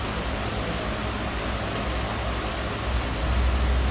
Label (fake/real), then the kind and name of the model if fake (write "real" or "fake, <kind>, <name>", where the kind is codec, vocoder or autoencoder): real